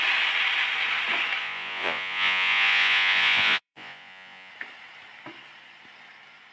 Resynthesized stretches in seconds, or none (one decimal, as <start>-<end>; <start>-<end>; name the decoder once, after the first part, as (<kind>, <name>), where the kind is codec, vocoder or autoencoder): 1.4-4.5 (vocoder, Vocos)